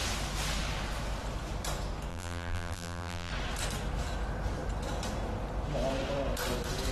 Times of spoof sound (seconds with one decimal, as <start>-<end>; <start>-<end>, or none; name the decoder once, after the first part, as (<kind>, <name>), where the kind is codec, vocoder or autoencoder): 2.1-3.3 (vocoder, BigVGAN v2)